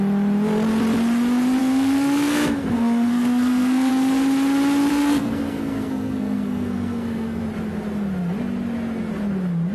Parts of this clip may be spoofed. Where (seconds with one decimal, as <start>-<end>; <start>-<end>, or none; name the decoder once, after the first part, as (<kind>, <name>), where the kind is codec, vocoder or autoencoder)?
1.6-3.9 (codec, SNAC); 4.9-7.4